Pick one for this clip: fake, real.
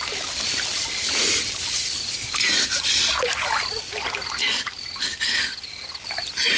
real